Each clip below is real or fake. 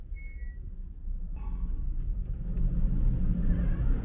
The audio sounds real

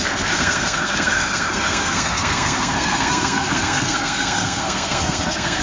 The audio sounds fake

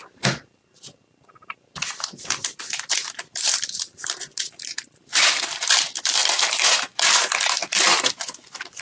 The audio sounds fake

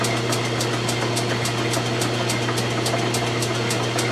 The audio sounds real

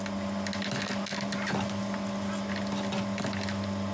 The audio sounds real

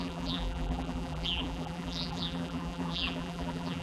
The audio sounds fake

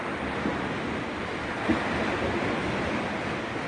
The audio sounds real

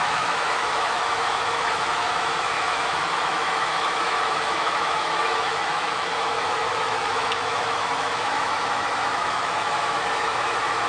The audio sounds fake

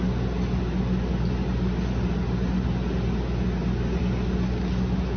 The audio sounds real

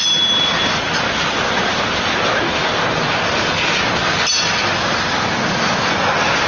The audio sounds real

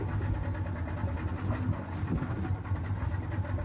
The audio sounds real